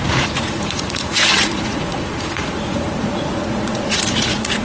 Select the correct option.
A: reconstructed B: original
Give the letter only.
A